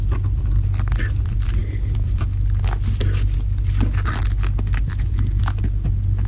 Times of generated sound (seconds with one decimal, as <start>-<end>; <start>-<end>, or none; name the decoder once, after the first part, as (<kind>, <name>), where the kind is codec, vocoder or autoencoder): none